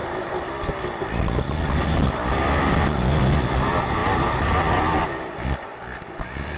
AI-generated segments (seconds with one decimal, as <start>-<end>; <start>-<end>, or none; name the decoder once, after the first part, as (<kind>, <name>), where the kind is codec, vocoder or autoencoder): none